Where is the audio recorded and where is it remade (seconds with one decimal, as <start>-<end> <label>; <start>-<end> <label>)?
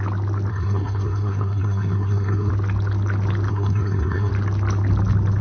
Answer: 0.0-0.5 recorded; 0.5-2.5 remade; 2.5-3.5 recorded; 3.5-4.3 remade; 4.3-5.4 recorded